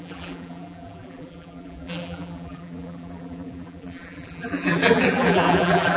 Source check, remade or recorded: remade